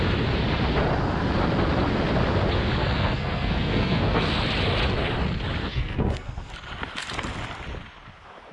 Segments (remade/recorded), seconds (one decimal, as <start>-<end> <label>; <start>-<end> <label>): 0.0-2.8 recorded; 2.8-4.3 remade; 4.3-5.6 recorded; 5.6-6.5 remade; 6.5-8.5 recorded